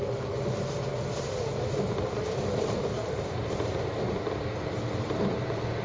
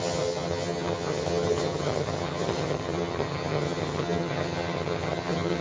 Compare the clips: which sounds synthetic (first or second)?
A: second